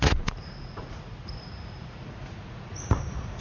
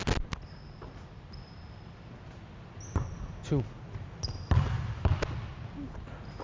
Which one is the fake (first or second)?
first